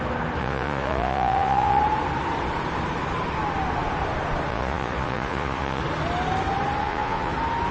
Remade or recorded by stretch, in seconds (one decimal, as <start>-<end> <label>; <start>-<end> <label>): 0.0-0.4 recorded; 0.4-1.8 remade; 1.8-4.5 recorded; 4.5-5.8 remade; 5.8-6.8 recorded; 6.8-7.3 remade; 7.3-7.7 recorded

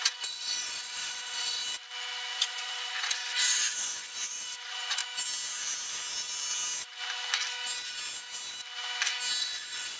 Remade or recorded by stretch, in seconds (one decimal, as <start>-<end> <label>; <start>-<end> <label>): 0.0-1.6 remade; 1.6-2.3 recorded; 2.3-5.0 remade; 5.0-9.4 recorded; 9.4-10.0 remade